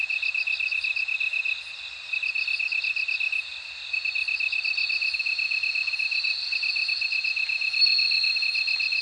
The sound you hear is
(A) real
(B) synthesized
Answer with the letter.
A